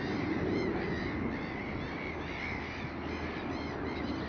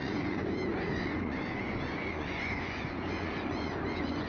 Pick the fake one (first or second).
second